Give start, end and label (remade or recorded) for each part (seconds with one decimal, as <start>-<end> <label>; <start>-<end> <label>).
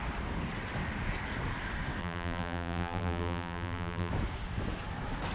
0.0-2.0 recorded; 2.0-4.1 remade; 4.1-5.3 recorded